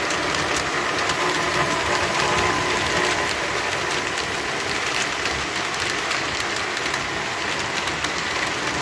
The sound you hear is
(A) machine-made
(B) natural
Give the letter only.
B